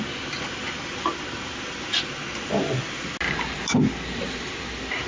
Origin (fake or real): real